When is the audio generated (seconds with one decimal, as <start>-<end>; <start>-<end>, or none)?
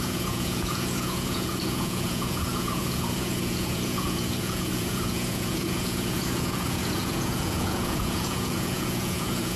0.0-9.6